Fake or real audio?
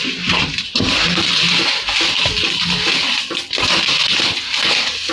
real